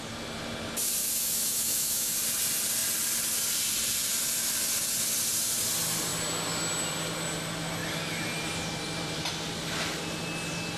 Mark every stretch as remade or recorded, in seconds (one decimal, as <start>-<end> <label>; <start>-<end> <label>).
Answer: 0.0-1.0 recorded; 1.0-2.1 remade; 2.1-10.8 recorded